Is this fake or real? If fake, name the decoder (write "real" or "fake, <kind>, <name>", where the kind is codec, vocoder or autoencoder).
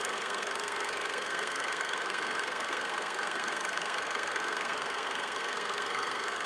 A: fake, codec, SNAC